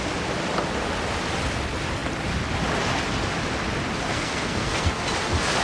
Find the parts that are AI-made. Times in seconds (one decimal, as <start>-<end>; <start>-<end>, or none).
4.1-5.0